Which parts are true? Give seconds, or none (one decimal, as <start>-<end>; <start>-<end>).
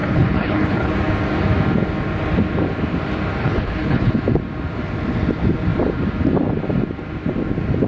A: 0.9-3.4; 4.1-7.9